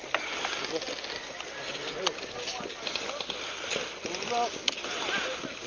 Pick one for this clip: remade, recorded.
recorded